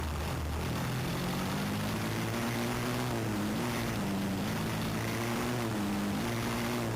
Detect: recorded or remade remade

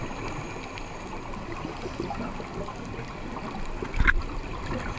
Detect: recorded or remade recorded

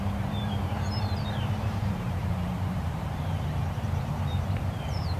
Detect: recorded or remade remade